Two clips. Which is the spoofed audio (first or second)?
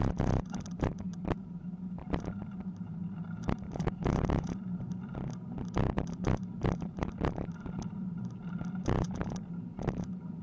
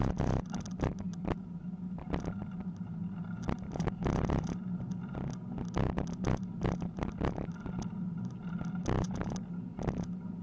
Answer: first